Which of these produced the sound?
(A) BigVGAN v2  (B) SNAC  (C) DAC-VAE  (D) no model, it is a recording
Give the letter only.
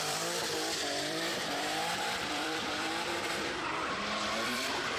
A